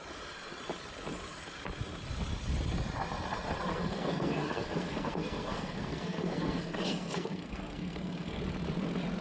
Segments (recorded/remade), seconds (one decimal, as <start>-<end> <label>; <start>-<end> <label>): 0.0-3.7 recorded; 3.7-8.4 remade; 8.4-9.2 recorded